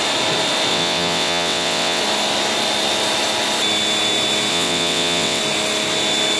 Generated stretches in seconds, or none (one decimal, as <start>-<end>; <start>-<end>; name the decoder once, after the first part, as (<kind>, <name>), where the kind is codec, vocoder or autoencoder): 0.7-2.0 (vocoder, WaveNeXt); 4.5-5.4